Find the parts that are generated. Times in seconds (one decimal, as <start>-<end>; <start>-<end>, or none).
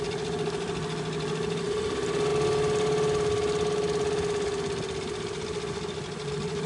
none